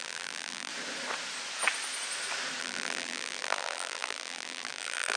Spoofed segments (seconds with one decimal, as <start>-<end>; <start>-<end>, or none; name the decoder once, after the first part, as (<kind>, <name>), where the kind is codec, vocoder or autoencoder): 0.0-0.7 (vocoder, BigVGAN v2); 2.6-5.2